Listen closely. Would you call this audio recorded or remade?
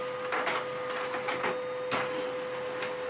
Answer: recorded